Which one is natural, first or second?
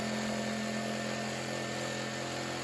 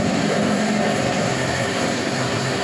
first